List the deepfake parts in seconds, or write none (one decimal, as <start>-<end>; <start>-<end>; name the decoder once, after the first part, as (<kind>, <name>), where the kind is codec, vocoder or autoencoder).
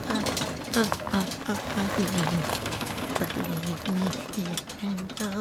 0.7-1.3 (codec, SNAC); 2.5-3.1